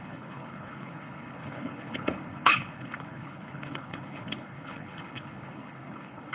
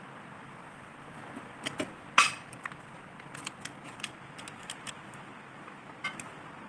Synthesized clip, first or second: first